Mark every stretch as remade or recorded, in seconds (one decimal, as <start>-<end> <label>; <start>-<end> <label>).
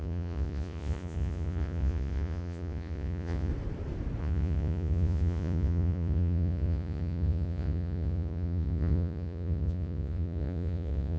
0.0-3.5 remade; 3.5-4.2 recorded; 4.2-11.2 remade